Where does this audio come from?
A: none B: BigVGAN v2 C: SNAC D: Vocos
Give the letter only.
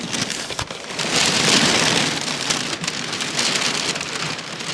A